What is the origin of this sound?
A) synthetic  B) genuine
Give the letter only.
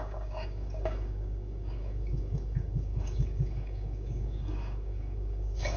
A